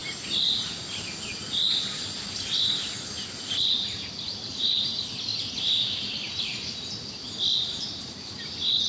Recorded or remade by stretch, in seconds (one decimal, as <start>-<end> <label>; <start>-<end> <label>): 0.0-8.9 recorded